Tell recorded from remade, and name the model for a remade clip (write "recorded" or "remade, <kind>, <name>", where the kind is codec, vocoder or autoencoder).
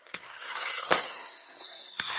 remade, codec, SNAC